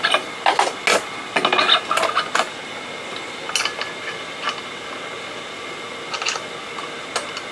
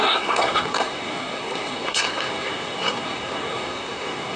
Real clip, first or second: first